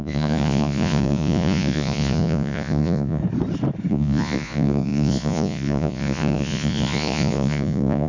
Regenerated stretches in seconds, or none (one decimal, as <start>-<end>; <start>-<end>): 0.0-3.2; 3.9-8.1

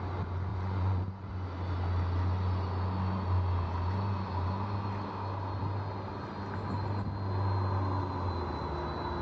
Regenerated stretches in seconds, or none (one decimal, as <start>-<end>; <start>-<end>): 0.5-1.3

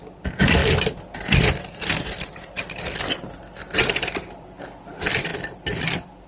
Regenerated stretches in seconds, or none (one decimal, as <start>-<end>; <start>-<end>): none

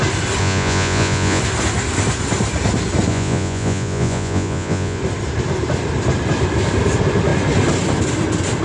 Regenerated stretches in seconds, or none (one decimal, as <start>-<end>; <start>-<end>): 0.4-1.4; 3.1-5.0